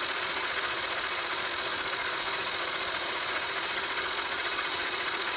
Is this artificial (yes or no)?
yes